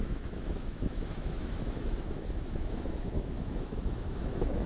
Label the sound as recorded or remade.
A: remade